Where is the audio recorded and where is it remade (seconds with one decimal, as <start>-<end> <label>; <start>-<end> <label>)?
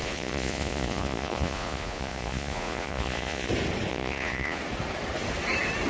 0.0-3.5 remade; 3.5-3.9 recorded; 3.9-4.6 remade; 4.6-5.9 recorded